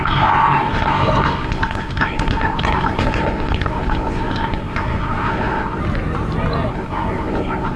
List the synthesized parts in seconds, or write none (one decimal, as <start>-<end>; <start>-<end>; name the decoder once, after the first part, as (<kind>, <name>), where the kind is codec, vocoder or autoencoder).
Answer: 0.0-5.8 (codec, SNAC); 6.7-7.8